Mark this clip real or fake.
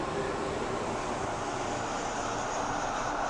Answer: real